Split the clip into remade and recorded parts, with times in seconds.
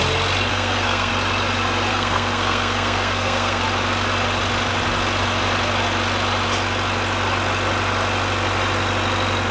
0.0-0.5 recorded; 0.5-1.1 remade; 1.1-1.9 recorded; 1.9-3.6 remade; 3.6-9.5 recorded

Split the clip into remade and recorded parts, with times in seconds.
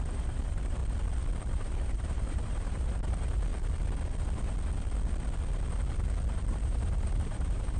0.0-0.8 remade; 0.8-1.4 recorded; 1.4-3.5 remade; 3.5-6.5 recorded; 6.5-7.8 remade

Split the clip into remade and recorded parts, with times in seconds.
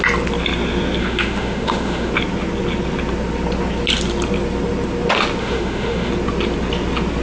0.0-1.0 recorded; 1.0-2.1 remade; 2.1-5.4 recorded; 5.4-6.1 remade; 6.1-7.2 recorded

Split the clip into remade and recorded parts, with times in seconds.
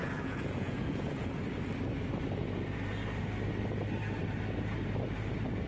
0.0-1.3 remade; 1.3-5.7 recorded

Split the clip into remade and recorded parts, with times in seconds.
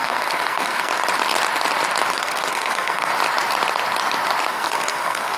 0.0-0.9 remade; 0.9-2.1 recorded; 2.1-3.1 remade; 3.1-4.5 recorded; 4.5-5.4 remade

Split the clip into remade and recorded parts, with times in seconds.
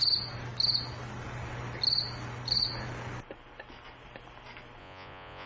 0.0-4.8 recorded; 4.8-5.5 remade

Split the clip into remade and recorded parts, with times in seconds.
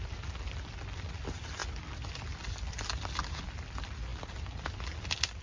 0.0-5.4 recorded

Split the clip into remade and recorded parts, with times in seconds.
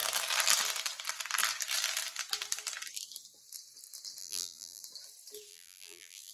0.0-4.2 recorded; 4.2-4.8 remade; 4.8-5.5 recorded; 5.5-6.3 remade